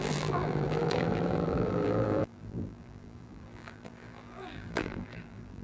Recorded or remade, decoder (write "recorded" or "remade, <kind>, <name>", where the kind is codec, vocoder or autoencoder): remade, vocoder, BigVGAN v2